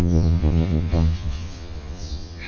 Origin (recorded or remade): remade